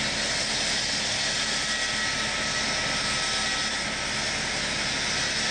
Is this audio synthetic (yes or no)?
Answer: no